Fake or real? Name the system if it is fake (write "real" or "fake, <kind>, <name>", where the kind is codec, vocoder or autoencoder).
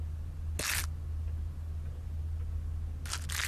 real